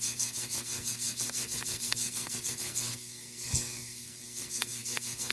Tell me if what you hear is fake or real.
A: fake